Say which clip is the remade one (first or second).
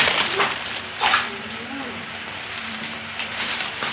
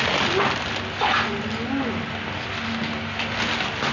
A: first